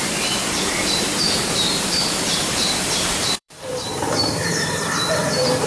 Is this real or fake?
fake